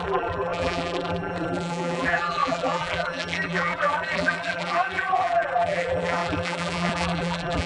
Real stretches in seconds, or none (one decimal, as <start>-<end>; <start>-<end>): none